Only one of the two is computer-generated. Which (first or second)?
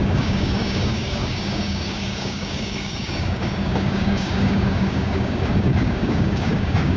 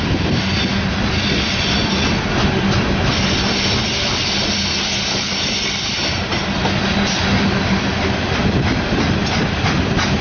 first